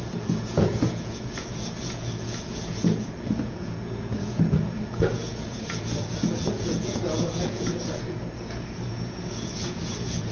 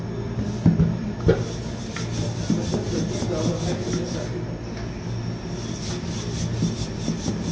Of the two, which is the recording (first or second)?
second